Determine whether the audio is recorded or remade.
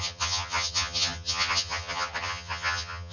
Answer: remade